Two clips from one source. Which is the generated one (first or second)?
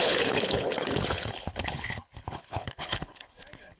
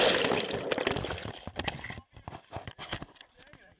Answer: first